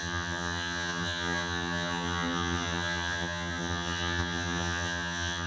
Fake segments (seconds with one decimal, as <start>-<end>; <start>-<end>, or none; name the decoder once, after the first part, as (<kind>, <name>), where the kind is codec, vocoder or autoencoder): 0.0-5.5 (vocoder, HiFi-GAN)